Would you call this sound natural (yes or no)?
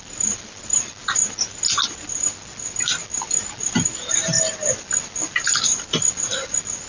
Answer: yes